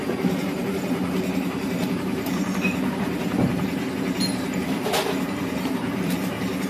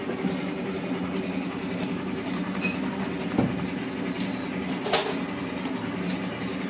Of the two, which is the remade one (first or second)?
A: first